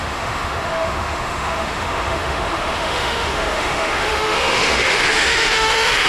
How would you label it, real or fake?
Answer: fake